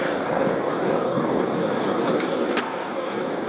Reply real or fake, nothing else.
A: fake